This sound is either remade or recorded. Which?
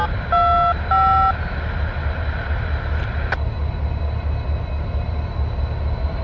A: recorded